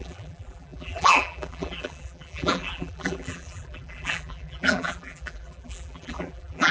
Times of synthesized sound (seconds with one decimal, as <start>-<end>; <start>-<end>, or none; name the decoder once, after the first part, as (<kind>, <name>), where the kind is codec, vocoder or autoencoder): 0.0-6.7 (vocoder, BigVGAN v2)